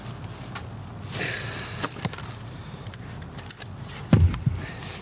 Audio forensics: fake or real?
real